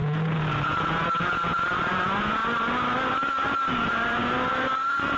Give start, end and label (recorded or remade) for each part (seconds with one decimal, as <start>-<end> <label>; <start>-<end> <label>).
0.0-2.4 remade; 2.4-3.1 recorded; 3.1-5.2 remade